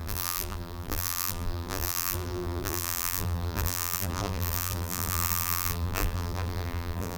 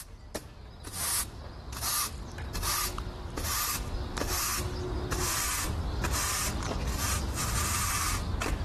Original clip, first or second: second